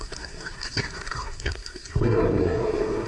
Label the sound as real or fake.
fake